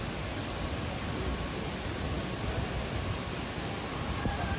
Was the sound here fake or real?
real